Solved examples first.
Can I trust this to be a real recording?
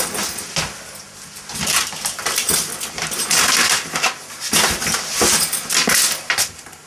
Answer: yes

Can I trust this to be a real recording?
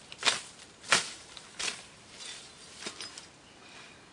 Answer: yes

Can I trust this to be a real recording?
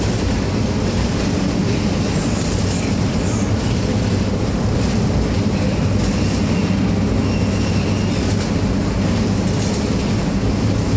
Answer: yes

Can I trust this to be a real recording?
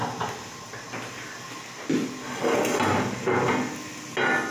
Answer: yes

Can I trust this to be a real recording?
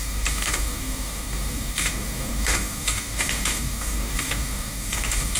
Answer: no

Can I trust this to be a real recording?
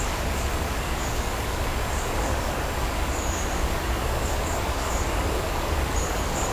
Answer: no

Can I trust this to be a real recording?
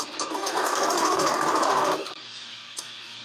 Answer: no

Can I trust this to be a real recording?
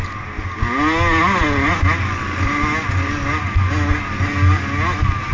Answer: yes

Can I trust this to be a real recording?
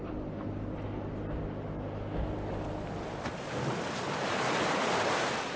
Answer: yes